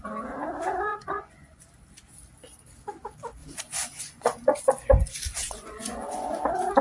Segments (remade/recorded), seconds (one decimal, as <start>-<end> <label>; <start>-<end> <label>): 0.0-0.9 recorded; 0.9-1.6 remade; 1.6-3.4 recorded; 3.4-4.6 remade; 4.6-5.4 recorded; 5.4-6.3 remade; 6.3-6.8 recorded